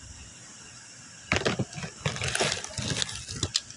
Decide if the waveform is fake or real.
real